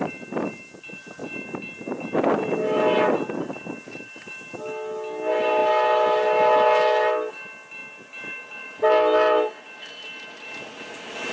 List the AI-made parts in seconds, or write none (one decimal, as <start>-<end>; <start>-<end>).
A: none

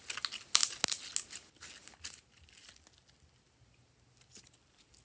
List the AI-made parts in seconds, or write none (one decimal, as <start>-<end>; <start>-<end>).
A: none